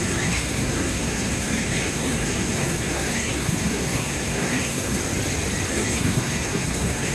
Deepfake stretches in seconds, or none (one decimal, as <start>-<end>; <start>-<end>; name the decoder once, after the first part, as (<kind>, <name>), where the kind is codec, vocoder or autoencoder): 0.0-5.0 (codec, SNAC); 5.7-7.1